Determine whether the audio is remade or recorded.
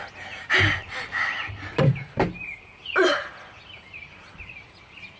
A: recorded